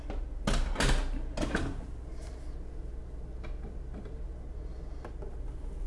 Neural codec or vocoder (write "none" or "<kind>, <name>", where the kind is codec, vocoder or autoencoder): none